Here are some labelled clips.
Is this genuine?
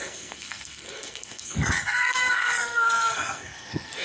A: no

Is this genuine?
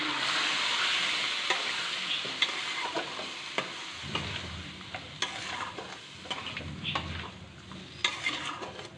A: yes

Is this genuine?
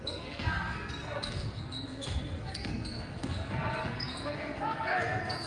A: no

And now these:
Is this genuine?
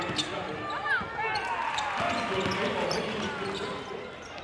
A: yes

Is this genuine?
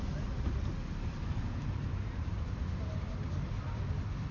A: yes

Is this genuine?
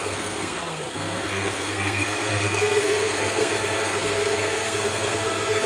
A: no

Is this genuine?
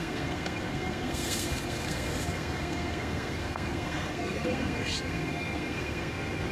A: no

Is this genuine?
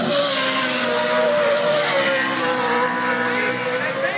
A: yes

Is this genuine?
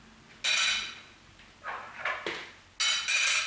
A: yes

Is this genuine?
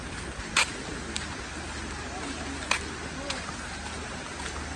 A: yes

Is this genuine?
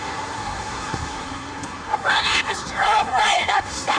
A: no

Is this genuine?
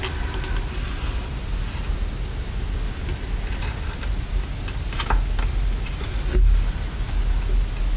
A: yes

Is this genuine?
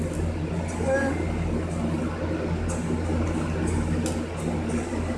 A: yes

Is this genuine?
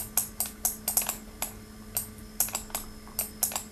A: yes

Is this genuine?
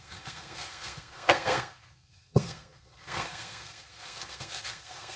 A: no